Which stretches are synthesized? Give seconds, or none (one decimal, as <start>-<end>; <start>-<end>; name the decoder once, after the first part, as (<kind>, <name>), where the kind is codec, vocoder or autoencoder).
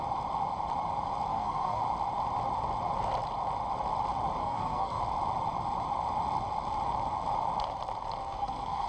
1.3-1.8 (codec, SNAC); 4.4-5.0; 8.2-8.9